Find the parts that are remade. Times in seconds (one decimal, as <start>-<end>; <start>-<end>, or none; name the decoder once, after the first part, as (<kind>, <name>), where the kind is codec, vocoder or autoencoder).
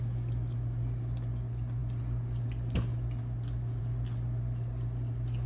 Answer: none